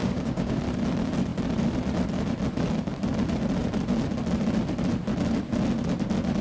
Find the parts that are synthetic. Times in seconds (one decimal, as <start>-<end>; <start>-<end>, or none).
0.0-0.6